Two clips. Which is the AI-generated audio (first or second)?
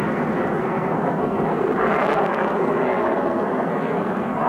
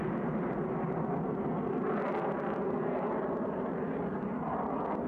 first